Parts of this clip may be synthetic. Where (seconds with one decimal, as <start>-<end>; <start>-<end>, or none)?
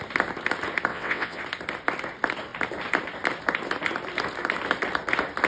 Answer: 0.9-1.4